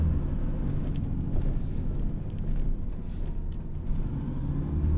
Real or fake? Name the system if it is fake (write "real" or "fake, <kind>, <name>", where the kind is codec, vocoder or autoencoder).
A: real